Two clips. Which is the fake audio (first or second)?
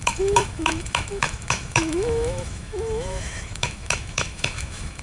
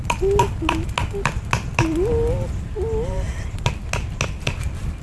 first